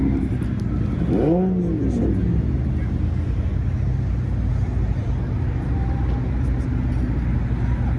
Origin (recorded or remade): recorded